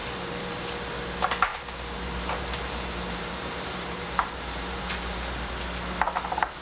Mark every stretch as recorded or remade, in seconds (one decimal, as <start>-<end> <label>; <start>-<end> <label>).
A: 0.0-0.6 remade; 0.6-1.5 recorded; 1.5-5.5 remade; 5.5-6.6 recorded